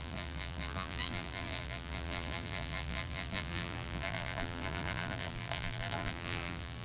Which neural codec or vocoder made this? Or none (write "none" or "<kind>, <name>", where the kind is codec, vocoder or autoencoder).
vocoder, BigVGAN v2